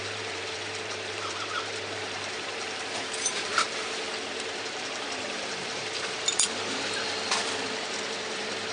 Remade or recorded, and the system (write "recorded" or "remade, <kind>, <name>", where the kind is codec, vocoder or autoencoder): remade, vocoder, BigVGAN v2